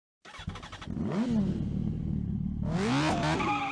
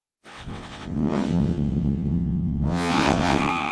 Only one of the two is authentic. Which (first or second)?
first